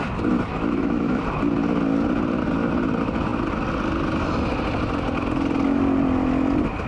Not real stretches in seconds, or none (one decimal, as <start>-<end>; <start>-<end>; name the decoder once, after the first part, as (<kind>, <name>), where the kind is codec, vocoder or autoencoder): 0.5-1.2 (autoencoder, DAC-VAE)